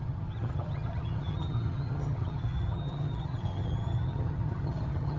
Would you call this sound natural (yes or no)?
no